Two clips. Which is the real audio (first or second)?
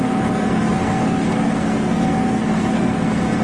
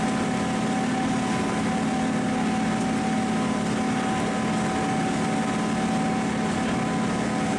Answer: second